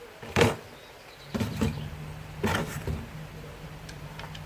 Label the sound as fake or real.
fake